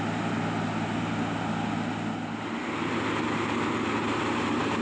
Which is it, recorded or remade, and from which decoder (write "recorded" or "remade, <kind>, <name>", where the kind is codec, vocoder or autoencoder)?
recorded